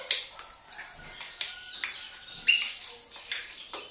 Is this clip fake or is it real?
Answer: real